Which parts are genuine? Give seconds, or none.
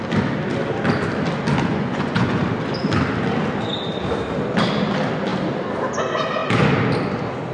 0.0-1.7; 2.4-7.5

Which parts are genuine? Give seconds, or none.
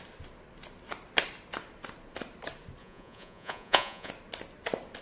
0.0-2.8; 4.1-5.0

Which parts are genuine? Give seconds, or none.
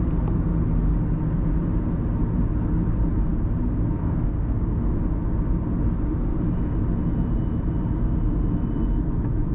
0.0-4.0; 4.9-9.5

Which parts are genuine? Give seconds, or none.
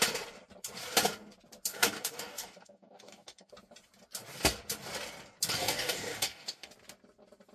0.0-1.7; 3.5-5.6; 6.7-7.5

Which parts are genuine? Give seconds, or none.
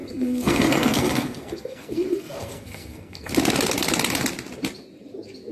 3.3-5.5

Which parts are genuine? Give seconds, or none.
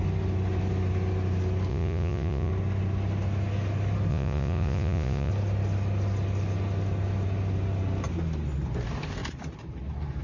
0.0-1.7; 2.5-4.1; 5.3-10.2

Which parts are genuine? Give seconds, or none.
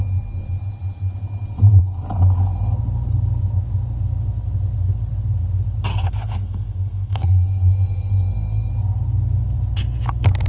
0.0-5.9; 8.7-10.5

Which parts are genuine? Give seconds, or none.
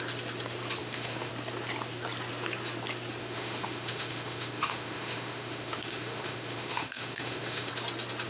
0.0-0.8; 1.3-3.2; 7.7-8.3